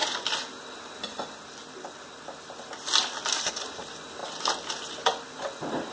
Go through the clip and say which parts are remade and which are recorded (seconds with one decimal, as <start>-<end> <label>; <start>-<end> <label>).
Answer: 0.0-5.9 recorded